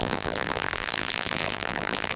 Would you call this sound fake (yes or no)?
yes